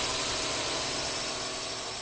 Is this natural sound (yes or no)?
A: yes